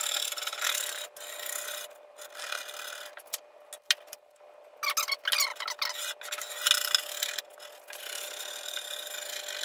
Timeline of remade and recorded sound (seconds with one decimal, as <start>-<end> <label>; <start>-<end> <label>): 0.0-9.6 recorded